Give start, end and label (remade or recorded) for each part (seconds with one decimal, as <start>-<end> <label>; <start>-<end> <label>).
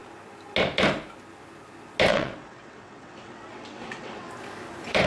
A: 0.0-2.1 recorded; 2.1-4.3 remade; 4.3-5.1 recorded